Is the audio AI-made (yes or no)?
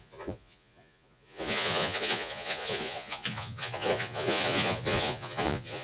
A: yes